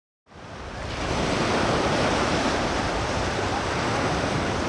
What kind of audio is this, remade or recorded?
recorded